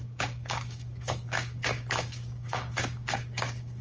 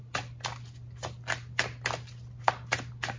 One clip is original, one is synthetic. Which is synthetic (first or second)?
first